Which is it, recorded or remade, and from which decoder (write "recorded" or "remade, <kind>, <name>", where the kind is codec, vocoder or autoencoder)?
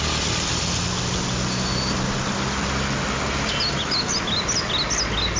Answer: recorded